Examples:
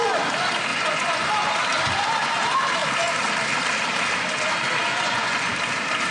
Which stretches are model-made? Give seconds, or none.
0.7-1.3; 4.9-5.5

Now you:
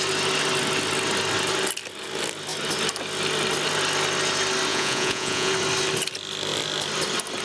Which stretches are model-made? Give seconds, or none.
4.7-5.5

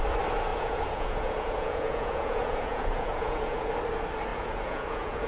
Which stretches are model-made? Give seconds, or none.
0.5-3.7; 4.3-5.3

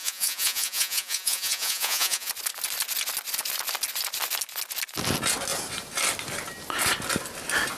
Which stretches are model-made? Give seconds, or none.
0.0-2.3

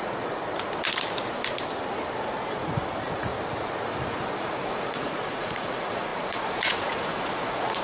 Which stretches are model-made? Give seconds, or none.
0.0-0.4; 2.2-3.3; 4.4-7.8

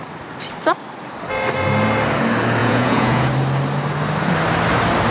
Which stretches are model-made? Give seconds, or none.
2.6-3.3